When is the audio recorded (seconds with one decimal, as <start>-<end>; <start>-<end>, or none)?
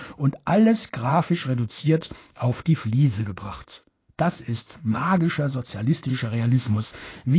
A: 0.0-1.1; 5.3-6.1